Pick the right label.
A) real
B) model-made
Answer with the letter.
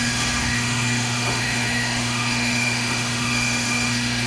B